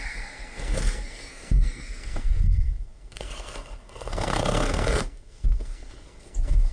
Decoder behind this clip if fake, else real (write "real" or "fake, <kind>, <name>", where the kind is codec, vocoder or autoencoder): fake, codec, SNAC